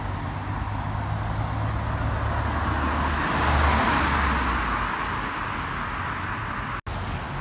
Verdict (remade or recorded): recorded